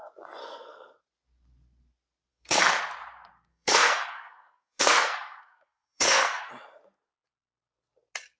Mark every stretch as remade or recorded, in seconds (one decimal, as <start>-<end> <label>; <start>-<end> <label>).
0.0-0.4 recorded; 0.4-1.0 remade; 1.0-2.3 recorded; 2.3-2.8 remade; 2.8-3.5 recorded; 3.5-6.5 remade; 6.5-8.4 recorded

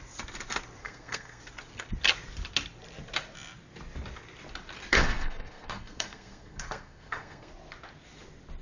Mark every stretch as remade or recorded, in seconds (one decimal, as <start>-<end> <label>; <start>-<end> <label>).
0.0-0.8 recorded; 0.8-1.4 remade; 1.4-4.9 recorded; 4.9-7.5 remade; 7.5-8.6 recorded

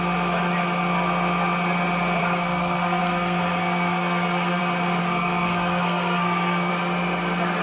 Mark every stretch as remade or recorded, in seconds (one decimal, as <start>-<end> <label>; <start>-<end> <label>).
0.0-2.2 recorded; 2.2-4.6 remade; 4.6-5.0 recorded; 5.0-6.7 remade; 6.7-7.6 recorded

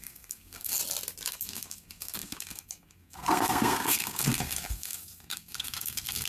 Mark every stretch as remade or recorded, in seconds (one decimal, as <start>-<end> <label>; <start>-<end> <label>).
0.0-0.8 remade; 0.8-1.3 recorded; 1.3-6.3 remade

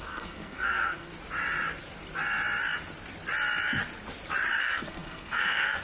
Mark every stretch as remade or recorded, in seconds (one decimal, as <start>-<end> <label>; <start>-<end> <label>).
0.0-1.1 remade; 1.1-4.6 recorded; 4.6-5.8 remade

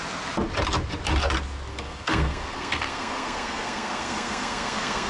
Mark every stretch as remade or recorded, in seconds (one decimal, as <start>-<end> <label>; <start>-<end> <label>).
0.0-1.7 recorded; 1.7-5.1 remade